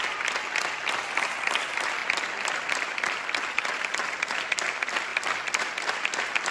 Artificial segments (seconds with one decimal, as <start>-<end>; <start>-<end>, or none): 0.5-2.0; 2.7-5.1; 5.8-6.5